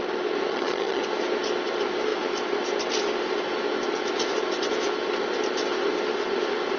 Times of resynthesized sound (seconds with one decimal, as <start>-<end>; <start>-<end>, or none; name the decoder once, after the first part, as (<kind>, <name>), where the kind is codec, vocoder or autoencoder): 0.5-1.0 (vocoder, HiFi-GAN)

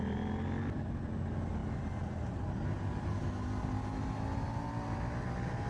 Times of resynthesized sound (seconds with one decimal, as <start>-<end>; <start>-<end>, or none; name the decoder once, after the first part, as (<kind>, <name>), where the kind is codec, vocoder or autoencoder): none

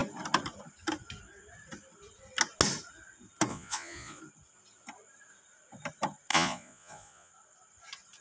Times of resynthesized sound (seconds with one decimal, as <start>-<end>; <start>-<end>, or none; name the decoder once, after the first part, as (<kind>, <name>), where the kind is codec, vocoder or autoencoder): 3.5-4.2 (vocoder, Vocos); 6.3-7.3

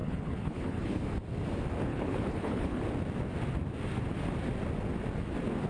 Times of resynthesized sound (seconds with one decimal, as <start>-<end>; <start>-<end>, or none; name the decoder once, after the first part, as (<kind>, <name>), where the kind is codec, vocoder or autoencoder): 0.0-1.0 (codec, HILCodec); 1.9-2.8

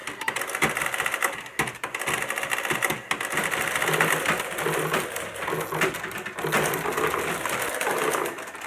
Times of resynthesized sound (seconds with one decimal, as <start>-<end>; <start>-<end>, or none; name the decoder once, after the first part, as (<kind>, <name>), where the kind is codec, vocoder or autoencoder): none